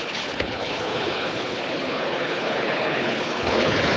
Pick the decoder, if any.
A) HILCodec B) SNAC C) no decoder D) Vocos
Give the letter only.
A